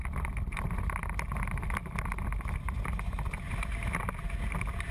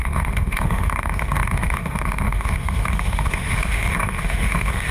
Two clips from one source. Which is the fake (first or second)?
second